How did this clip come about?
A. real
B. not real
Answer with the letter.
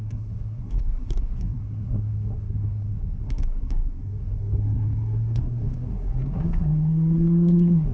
B